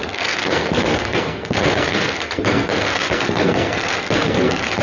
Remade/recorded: remade